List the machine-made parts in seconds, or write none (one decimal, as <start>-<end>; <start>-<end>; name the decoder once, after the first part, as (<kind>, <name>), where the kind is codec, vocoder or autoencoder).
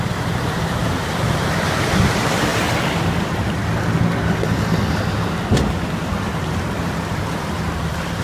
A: 0.8-1.5 (vocoder, BigVGAN v2)